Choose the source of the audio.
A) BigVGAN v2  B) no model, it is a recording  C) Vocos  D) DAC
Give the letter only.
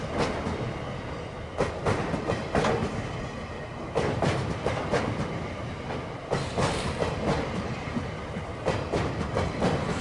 A